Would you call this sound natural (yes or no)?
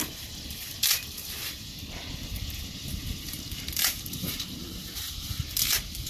no